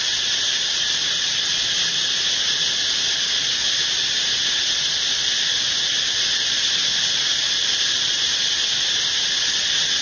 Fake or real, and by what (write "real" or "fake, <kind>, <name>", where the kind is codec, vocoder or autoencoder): real